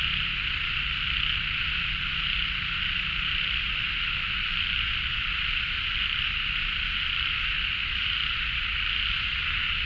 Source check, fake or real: real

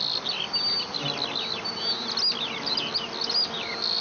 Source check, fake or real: real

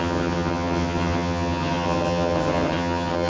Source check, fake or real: fake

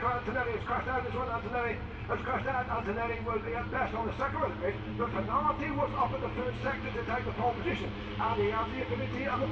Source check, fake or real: real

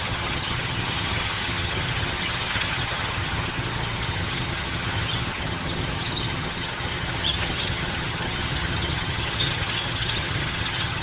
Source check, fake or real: fake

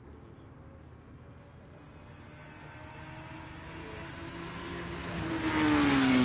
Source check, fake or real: real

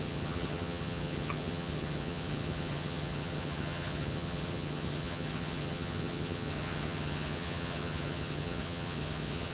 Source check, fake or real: fake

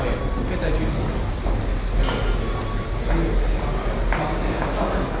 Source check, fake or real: real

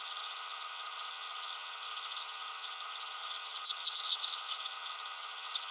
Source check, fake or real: fake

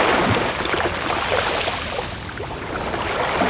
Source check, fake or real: real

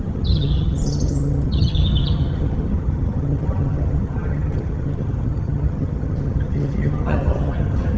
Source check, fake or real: fake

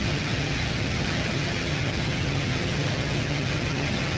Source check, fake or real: fake